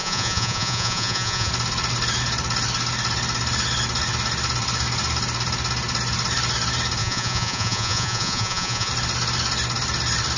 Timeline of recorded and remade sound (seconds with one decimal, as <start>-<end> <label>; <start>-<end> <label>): 0.0-1.5 remade; 1.5-7.0 recorded; 7.0-8.9 remade; 8.9-10.4 recorded